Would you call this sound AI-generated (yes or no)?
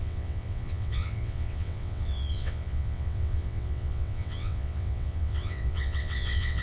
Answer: yes